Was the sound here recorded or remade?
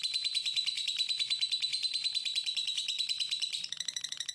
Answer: remade